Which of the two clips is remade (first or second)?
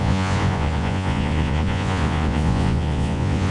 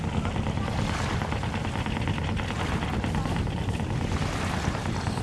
first